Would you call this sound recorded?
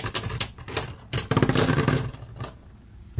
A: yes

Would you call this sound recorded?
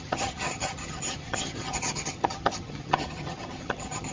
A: no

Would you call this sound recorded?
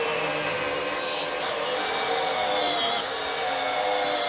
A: yes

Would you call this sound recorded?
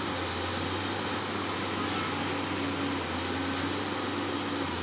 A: yes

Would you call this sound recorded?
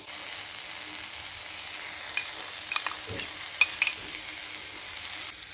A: yes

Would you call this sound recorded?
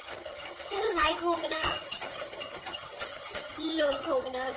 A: no